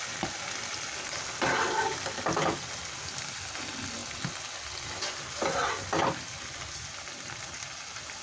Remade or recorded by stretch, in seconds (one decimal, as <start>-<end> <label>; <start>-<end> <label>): 0.0-8.2 recorded